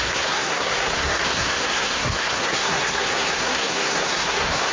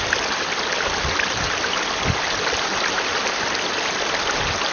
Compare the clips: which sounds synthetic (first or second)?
first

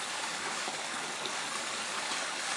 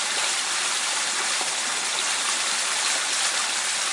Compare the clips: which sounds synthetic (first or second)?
first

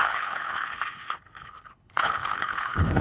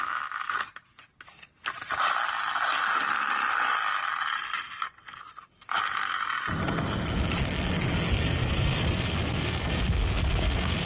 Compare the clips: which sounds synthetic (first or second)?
first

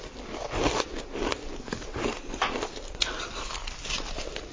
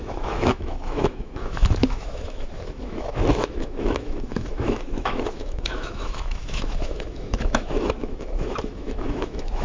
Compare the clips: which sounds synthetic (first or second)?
second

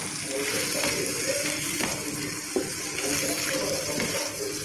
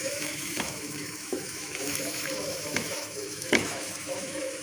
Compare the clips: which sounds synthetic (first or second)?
second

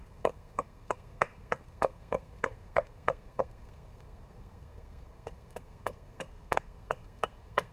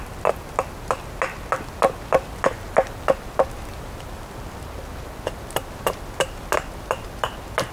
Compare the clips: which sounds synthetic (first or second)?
first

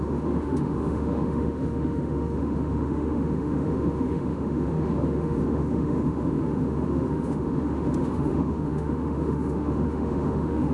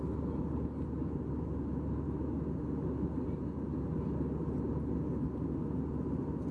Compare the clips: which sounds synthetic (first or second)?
first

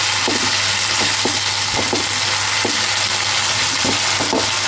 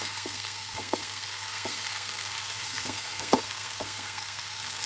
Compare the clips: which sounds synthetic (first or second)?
second